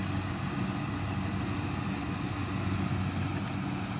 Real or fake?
real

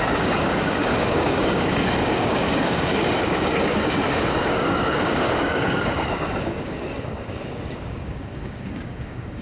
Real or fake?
fake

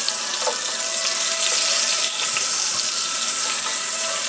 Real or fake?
real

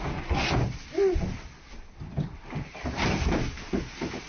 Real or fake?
real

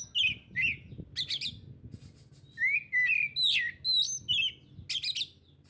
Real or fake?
real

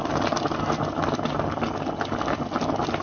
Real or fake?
real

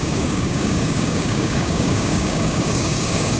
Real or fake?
fake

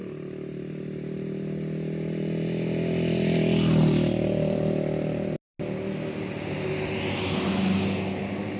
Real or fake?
real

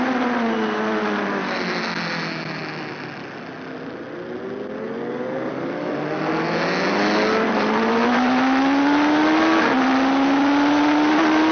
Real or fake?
real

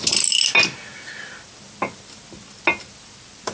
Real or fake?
real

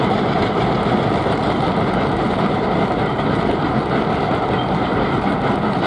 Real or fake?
real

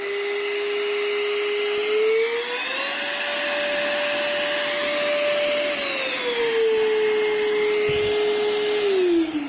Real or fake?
real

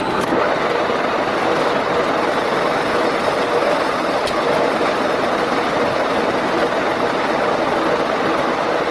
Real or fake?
real